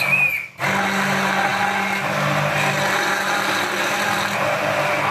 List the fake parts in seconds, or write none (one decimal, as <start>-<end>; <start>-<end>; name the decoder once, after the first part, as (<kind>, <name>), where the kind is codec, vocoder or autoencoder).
none